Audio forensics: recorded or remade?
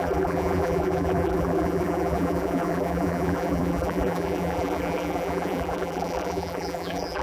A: remade